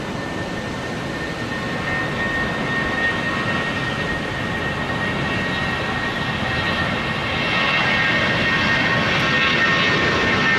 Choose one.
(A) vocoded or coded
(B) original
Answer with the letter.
B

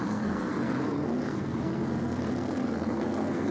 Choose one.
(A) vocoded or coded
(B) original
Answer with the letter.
A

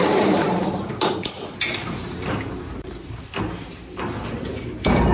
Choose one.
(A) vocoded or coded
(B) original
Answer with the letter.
A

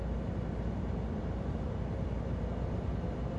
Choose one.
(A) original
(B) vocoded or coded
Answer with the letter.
A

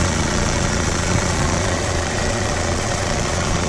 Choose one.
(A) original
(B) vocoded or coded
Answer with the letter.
B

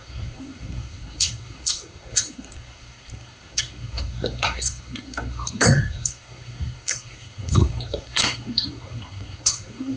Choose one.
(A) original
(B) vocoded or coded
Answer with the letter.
B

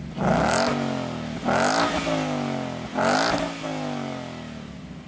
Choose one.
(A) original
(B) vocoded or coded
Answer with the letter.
A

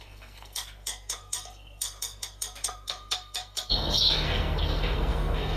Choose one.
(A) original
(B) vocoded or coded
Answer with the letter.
B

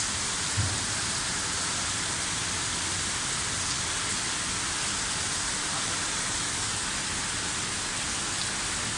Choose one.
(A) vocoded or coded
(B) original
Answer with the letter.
B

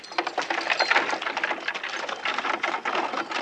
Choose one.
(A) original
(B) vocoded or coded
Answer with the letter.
A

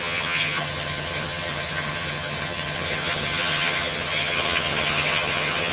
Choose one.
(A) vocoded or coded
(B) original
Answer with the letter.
A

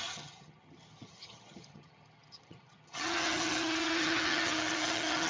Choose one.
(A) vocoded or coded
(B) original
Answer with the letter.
A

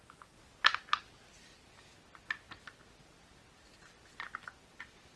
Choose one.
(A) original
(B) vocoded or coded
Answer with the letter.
A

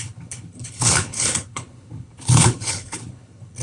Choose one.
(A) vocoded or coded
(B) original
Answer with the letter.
A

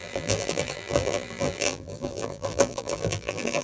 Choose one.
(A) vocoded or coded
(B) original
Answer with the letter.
A